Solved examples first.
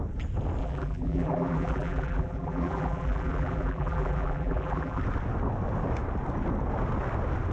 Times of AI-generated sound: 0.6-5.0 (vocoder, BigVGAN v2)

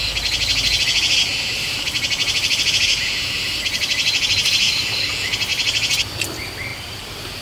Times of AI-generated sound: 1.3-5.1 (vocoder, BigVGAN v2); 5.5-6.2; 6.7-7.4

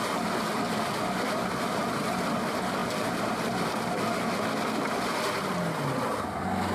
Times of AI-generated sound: 2.8-3.5 (vocoder, BigVGAN v2)